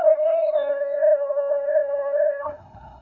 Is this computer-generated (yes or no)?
yes